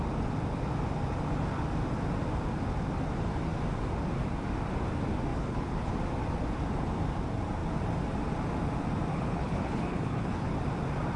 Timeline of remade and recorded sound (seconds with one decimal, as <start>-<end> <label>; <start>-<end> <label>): 0.0-5.3 recorded; 5.3-5.9 remade; 5.9-9.1 recorded; 9.1-10.5 remade; 10.5-11.2 recorded